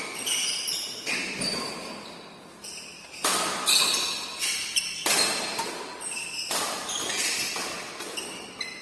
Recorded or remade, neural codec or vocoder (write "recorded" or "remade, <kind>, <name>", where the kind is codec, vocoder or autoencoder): recorded